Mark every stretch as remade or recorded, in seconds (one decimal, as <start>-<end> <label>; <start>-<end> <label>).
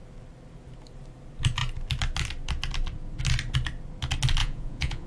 0.0-4.4 recorded; 4.4-5.1 remade